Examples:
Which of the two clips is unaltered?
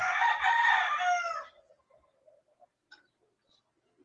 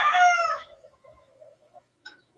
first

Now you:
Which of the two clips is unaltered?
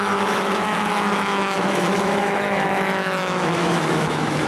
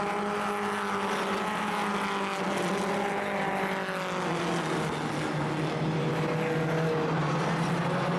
second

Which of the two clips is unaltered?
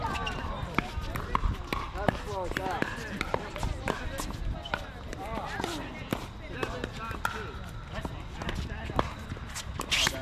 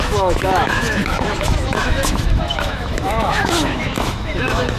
first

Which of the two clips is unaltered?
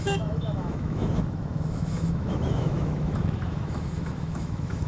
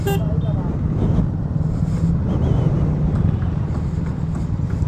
second